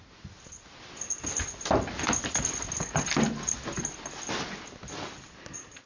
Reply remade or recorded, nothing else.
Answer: recorded